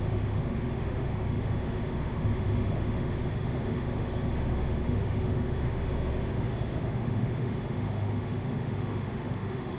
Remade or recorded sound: remade